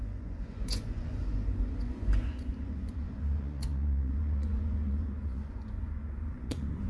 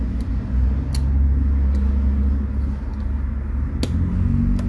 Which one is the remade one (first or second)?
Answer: first